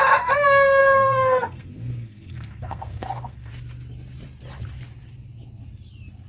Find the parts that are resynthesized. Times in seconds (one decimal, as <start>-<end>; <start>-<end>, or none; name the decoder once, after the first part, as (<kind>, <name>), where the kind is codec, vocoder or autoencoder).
0.8-3.5 (codec, SNAC)